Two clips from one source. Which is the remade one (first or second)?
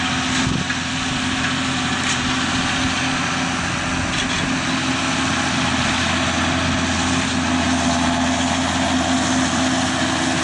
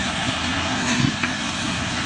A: second